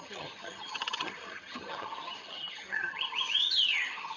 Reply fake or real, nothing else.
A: fake